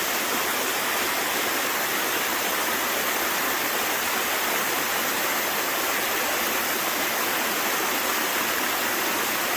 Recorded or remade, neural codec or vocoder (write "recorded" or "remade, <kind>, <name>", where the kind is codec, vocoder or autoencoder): recorded